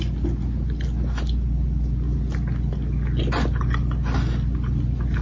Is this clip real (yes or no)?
yes